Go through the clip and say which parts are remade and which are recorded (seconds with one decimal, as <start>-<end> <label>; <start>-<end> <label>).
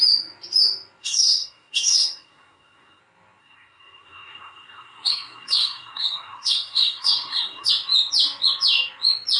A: 0.0-1.0 recorded; 1.0-3.0 remade; 3.0-3.4 recorded; 3.4-7.7 remade; 7.7-9.4 recorded